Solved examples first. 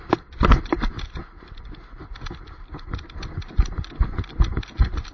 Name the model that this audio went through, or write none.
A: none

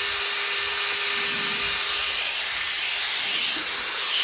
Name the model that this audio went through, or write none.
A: none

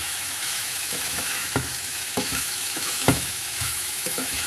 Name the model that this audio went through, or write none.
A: autoencoder, DAC-VAE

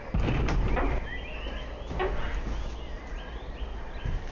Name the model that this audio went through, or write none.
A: none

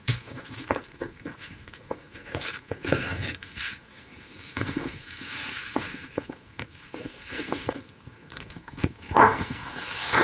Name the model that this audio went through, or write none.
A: codec, SNAC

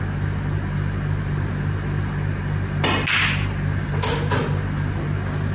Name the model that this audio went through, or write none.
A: none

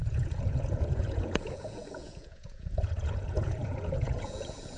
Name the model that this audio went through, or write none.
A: vocoder, Vocos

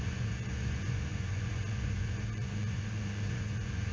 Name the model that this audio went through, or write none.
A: vocoder, Vocos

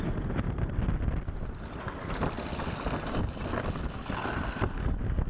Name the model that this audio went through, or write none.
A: none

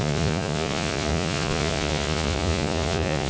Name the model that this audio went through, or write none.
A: vocoder, Vocos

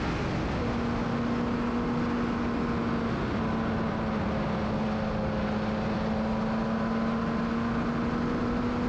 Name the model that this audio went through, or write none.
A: none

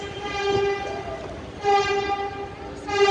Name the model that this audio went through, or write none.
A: none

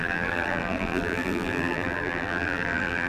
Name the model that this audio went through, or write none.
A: vocoder, BigVGAN v2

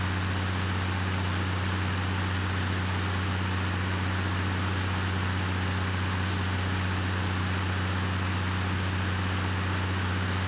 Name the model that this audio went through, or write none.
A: none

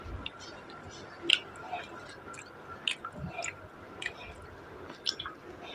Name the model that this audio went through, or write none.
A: none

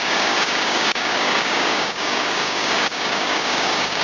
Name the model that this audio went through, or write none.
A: codec, DAC